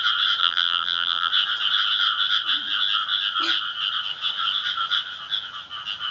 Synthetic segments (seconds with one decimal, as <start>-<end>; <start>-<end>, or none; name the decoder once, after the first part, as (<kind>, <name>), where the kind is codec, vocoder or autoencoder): 0.4-1.3 (vocoder, BigVGAN v2)